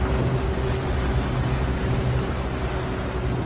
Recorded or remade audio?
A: recorded